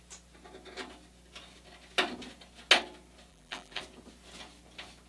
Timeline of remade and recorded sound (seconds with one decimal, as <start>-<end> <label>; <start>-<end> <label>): 0.0-3.3 recorded; 3.3-3.8 remade; 3.8-5.1 recorded